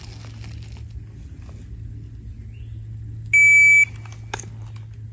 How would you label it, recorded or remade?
recorded